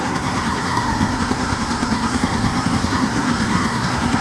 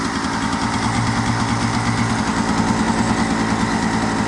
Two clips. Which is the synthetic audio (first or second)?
first